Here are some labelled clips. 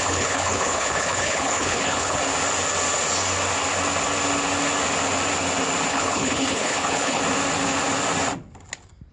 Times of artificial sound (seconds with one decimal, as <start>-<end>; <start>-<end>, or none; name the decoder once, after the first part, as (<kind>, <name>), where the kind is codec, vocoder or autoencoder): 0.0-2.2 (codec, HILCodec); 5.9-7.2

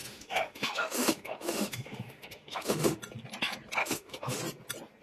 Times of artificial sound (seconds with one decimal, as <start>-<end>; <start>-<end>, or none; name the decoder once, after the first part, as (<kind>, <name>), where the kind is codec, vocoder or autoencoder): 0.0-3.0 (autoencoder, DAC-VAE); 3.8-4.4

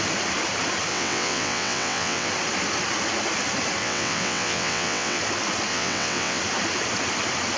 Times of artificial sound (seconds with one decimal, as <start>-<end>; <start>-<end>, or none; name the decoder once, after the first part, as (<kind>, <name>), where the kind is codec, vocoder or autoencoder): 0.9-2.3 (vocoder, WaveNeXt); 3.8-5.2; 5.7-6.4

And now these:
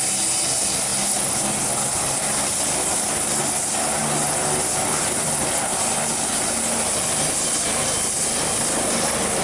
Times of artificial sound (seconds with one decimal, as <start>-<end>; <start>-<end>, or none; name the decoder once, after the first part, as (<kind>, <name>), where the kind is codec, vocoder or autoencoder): none

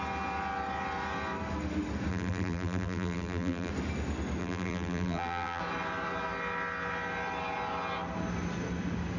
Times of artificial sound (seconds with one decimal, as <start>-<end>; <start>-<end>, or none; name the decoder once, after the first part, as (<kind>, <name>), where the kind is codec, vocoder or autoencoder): 2.1-3.7 (vocoder, BigVGAN v2); 4.4-5.6

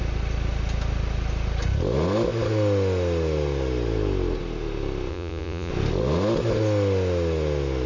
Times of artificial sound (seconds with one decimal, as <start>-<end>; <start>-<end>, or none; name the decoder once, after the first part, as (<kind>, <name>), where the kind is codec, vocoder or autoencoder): 5.1-5.7 (vocoder, Vocos)

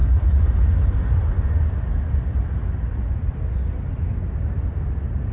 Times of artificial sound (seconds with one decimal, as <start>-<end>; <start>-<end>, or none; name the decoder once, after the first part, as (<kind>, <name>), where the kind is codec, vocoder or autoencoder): none